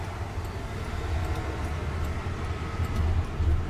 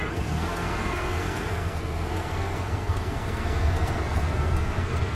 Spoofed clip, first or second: second